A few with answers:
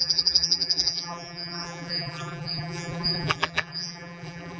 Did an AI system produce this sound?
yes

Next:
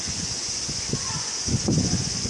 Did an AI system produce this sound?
yes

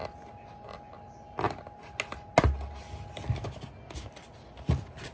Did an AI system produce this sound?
no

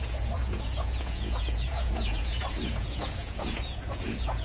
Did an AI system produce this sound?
yes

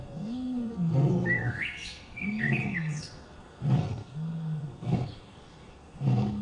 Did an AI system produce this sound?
yes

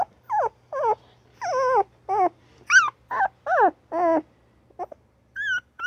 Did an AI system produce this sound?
no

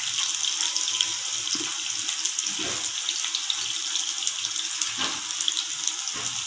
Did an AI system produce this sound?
no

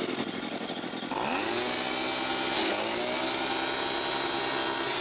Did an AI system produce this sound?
no